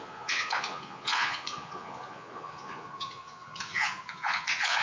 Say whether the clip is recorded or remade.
remade